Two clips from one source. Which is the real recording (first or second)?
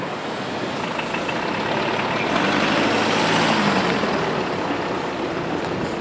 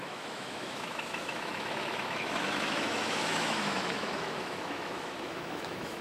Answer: first